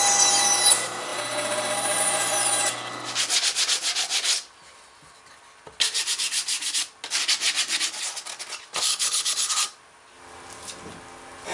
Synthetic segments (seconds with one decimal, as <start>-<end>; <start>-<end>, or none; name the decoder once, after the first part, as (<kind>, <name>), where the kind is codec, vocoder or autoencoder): 8.9-9.5 (codec, HILCodec)